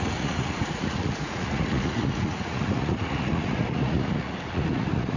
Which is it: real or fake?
fake